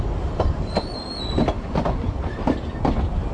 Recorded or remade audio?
recorded